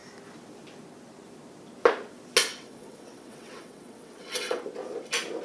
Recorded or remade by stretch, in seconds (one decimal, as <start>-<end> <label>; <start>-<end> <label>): 0.0-2.5 recorded; 2.5-4.6 remade; 4.6-5.4 recorded